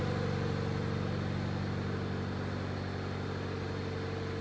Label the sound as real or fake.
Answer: real